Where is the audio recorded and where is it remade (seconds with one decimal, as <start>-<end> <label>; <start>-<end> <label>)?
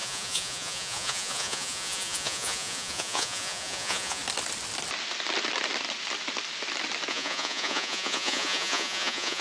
0.0-4.2 remade; 4.2-7.1 recorded; 7.1-9.4 remade